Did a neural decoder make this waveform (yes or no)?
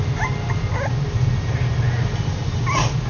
no